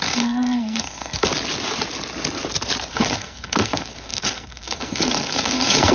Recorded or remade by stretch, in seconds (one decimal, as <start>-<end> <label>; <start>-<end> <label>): 0.0-1.3 remade; 1.3-2.9 recorded; 2.9-5.9 remade